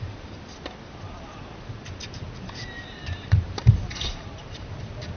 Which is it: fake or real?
fake